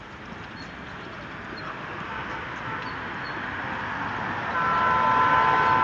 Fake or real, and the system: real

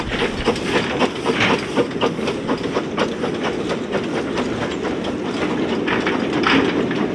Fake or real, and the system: real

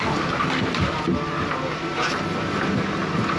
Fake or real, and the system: real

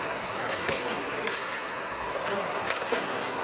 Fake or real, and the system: fake, codec, SNAC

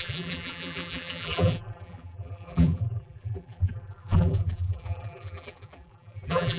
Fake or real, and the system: fake, vocoder, BigVGAN v2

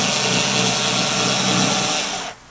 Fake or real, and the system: real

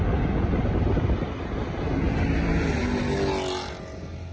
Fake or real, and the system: real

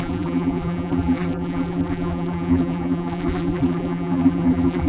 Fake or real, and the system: fake, vocoder, BigVGAN v2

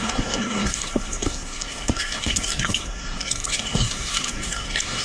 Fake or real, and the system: fake, codec, SNAC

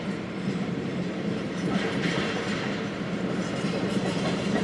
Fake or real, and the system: fake, vocoder, BigVGAN v2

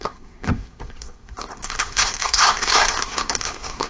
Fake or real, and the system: fake, codec, SNAC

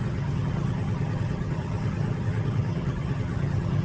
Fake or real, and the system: fake, vocoder, HiFi-GAN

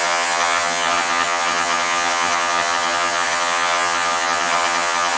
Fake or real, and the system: fake, vocoder, HiFi-GAN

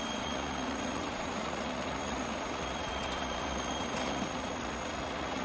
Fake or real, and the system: fake, vocoder, Vocos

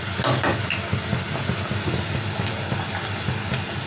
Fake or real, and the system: real